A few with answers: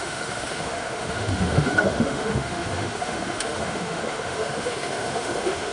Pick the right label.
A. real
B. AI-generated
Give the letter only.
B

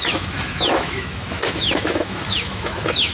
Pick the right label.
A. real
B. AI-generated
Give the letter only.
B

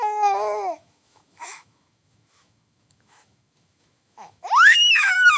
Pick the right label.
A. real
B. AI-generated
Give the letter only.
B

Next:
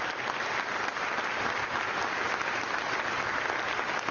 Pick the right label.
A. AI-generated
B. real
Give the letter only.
B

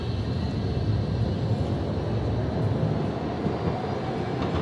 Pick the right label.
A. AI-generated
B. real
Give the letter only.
B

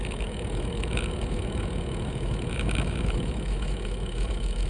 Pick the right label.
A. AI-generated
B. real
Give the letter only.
A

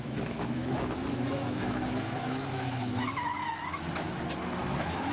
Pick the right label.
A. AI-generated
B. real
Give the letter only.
A